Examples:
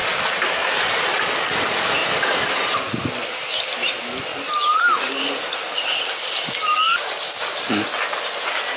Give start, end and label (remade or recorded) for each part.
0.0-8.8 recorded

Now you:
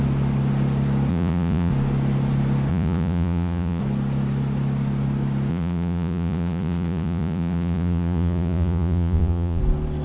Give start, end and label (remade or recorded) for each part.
0.0-1.1 recorded; 1.1-1.7 remade; 1.7-2.7 recorded; 2.7-3.8 remade; 3.8-5.5 recorded; 5.5-9.6 remade; 9.6-10.0 recorded